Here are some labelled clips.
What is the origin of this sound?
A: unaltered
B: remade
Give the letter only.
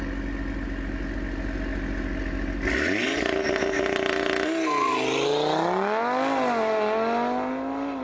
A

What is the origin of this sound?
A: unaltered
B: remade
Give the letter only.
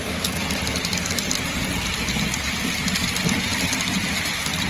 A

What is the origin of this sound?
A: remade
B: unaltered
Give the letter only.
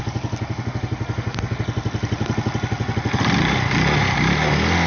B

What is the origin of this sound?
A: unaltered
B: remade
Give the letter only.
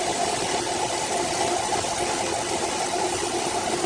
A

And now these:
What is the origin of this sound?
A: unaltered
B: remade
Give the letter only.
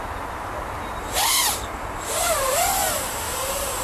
B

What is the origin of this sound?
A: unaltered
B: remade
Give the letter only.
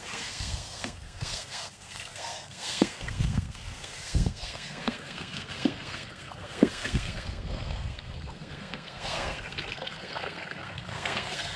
B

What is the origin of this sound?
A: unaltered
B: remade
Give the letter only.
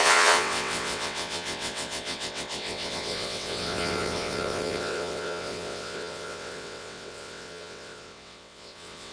B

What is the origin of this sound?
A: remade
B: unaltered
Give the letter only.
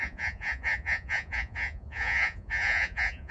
A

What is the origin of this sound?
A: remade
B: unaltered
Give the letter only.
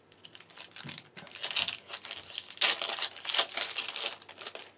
B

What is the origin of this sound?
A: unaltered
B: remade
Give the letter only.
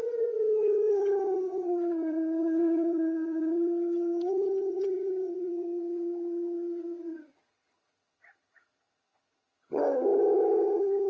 B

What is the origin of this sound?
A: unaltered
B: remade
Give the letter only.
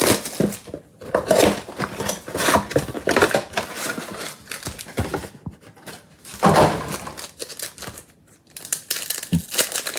A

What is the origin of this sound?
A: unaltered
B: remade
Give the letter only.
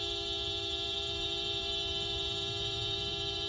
B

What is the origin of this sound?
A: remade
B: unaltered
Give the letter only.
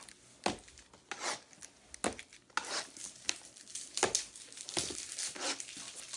B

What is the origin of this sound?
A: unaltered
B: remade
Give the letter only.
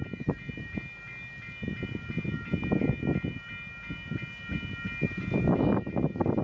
A